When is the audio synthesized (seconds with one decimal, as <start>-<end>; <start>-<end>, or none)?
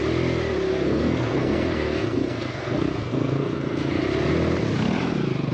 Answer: 0.7-4.0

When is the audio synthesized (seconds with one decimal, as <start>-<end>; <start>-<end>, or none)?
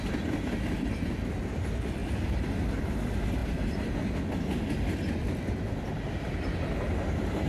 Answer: 2.0-2.9; 3.4-4.2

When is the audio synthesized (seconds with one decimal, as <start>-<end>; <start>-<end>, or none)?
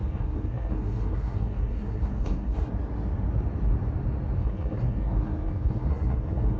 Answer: 0.0-2.7; 4.4-6.6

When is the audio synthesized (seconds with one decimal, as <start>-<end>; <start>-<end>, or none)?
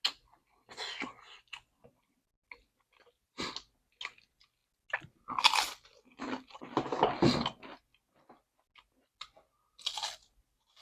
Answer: none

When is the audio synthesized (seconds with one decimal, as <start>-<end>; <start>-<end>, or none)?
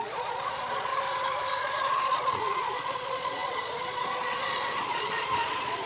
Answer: 0.0-0.9; 1.6-5.9